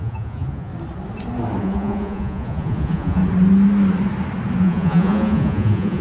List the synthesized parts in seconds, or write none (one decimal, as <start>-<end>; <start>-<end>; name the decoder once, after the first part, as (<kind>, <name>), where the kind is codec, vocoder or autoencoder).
0.0-0.7 (vocoder, Vocos); 1.6-3.2; 4.6-6.0